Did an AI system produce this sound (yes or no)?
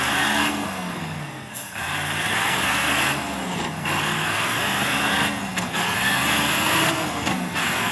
yes